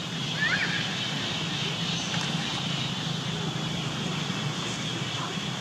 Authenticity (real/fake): real